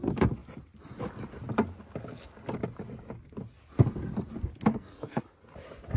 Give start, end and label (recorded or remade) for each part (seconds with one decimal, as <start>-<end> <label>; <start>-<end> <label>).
0.0-4.7 recorded; 4.7-5.2 remade; 5.2-6.0 recorded